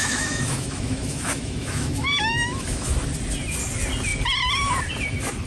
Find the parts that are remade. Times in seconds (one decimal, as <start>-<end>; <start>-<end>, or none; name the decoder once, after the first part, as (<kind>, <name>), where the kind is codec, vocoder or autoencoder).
0.0-2.9 (autoencoder, DAC-VAE)